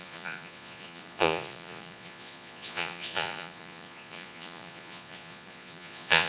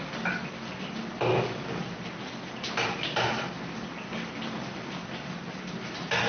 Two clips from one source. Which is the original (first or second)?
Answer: second